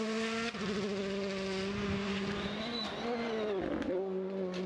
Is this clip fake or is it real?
real